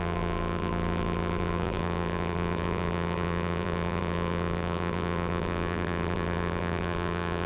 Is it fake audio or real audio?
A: fake